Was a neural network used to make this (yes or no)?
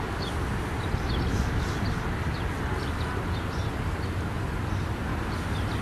no